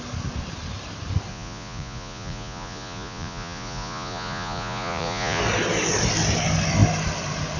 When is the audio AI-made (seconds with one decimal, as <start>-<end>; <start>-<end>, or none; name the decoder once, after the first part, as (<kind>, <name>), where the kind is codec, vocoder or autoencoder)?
1.3-5.4 (vocoder, Vocos)